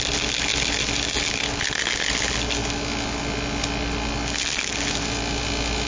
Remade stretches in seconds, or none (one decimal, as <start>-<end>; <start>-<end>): none